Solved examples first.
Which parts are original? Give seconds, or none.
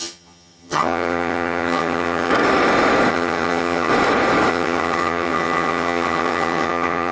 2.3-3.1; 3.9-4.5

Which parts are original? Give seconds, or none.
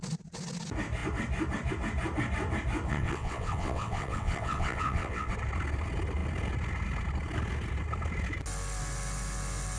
0.0-2.9; 5.3-9.8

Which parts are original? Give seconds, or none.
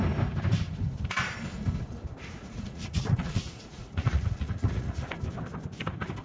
0.0-2.4; 5.1-6.2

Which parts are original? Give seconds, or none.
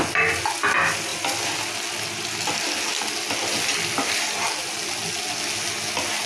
0.0-6.3